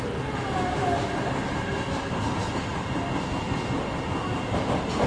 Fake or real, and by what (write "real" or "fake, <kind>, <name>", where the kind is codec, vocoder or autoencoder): real